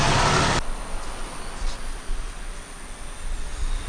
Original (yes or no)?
yes